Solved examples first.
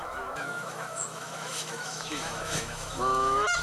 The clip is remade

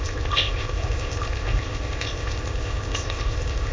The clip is remade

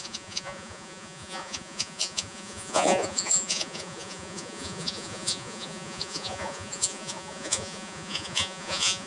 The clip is remade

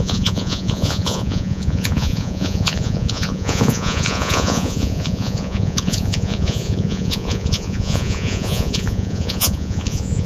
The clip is remade